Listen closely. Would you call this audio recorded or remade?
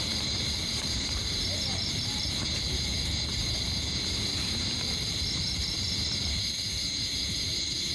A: remade